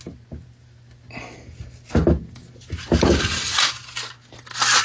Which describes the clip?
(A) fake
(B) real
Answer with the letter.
B